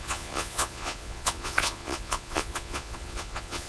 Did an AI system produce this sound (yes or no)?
yes